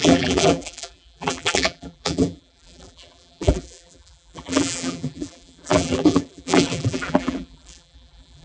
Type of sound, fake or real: fake